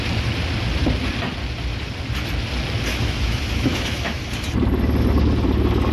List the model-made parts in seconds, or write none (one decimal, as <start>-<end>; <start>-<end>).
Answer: 2.9-4.2